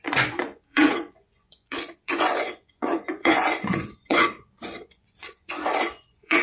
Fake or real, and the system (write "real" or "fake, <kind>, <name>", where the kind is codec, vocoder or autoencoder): fake, vocoder, Vocos